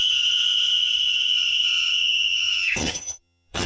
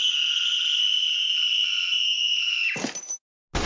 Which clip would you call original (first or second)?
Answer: second